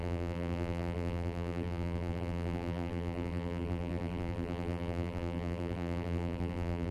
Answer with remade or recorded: remade